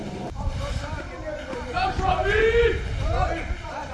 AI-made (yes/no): yes